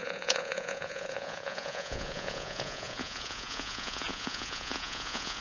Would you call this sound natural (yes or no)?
no